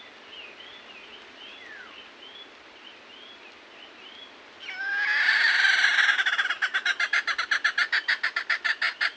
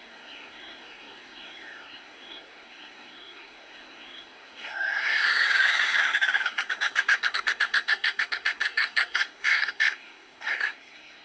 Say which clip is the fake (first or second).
second